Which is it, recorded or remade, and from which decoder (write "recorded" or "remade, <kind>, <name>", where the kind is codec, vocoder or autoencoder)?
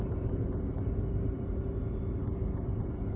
recorded